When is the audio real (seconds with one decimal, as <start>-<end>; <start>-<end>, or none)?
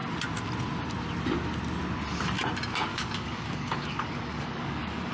0.0-2.9